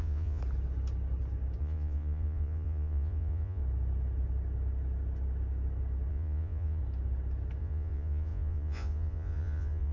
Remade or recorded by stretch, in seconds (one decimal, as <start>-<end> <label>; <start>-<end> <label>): 0.0-0.4 remade; 0.4-1.6 recorded; 1.6-3.6 remade; 3.6-6.1 recorded; 6.1-6.8 remade; 6.8-7.6 recorded; 7.6-9.9 remade